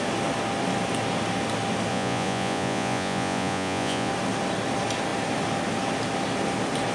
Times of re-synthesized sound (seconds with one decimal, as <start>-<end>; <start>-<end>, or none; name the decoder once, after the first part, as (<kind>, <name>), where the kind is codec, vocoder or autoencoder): 1.9-4.1 (vocoder, Vocos)